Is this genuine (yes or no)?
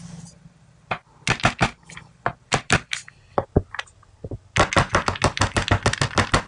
yes